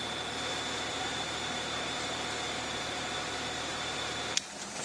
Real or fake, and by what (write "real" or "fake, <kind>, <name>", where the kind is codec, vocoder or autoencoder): fake, vocoder, BigVGAN v2